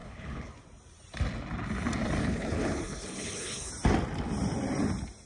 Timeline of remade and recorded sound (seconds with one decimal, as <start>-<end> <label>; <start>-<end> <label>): 0.0-0.5 remade; 0.5-2.2 recorded; 2.2-3.7 remade; 3.7-5.3 recorded